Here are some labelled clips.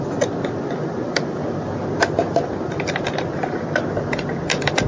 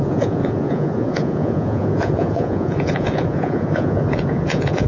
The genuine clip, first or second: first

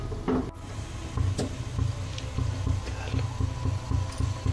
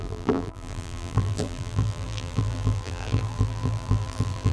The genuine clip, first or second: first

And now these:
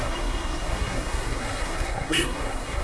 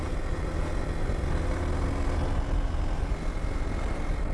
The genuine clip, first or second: second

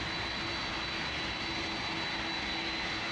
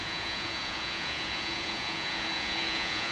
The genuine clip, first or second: first